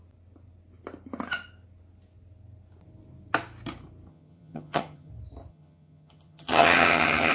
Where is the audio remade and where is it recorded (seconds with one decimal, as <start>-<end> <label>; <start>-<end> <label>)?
0.0-4.1 recorded; 4.1-5.1 remade; 5.1-5.5 recorded; 5.5-7.3 remade